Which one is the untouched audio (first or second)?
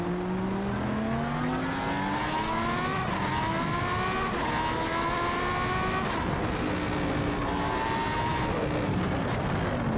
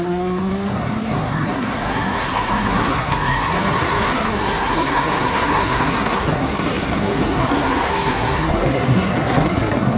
first